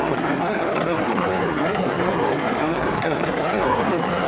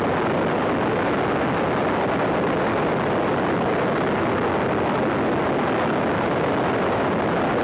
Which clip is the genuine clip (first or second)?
second